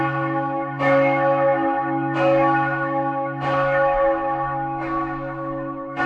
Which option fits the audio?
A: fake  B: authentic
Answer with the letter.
A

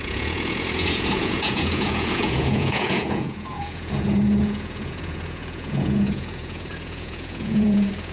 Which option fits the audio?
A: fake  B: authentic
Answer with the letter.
A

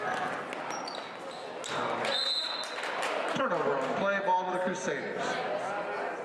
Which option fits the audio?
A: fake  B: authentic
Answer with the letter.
B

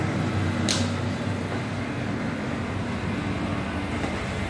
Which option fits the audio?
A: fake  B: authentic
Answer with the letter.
B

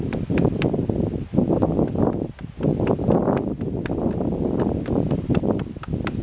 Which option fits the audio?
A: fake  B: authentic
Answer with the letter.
B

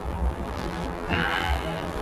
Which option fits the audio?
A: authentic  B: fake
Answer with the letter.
B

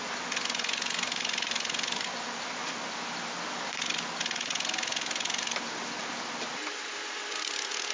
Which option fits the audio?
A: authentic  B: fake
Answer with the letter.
A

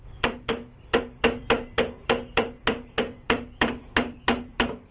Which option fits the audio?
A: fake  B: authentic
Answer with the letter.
A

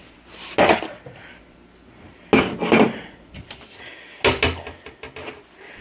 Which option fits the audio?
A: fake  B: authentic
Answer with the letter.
B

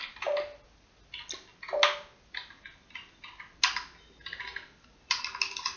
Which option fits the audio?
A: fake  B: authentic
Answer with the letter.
B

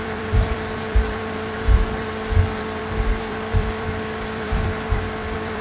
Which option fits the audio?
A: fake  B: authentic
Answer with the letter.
A